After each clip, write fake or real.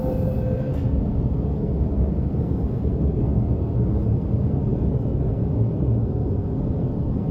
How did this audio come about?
fake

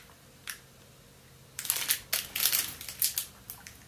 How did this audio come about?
real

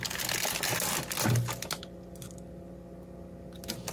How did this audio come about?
real